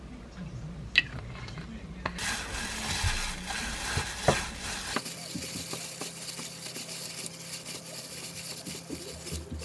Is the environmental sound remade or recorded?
recorded